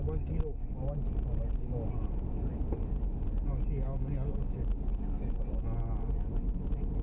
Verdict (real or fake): real